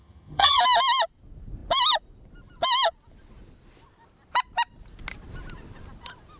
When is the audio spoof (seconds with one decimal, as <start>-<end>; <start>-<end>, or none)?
0.0-0.6